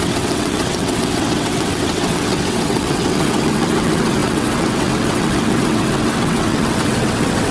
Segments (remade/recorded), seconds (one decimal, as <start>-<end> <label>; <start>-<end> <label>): 0.0-7.5 remade